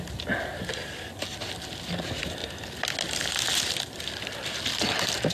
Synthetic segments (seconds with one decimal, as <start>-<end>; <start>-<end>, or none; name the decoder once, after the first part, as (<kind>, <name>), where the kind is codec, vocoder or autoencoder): none